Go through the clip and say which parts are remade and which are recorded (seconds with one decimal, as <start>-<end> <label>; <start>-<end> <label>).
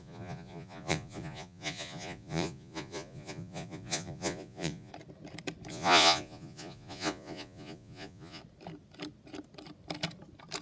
0.0-4.9 remade; 4.9-5.7 recorded; 5.7-8.4 remade; 8.4-10.6 recorded